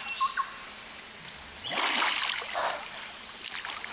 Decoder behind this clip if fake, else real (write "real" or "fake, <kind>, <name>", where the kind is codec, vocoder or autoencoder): real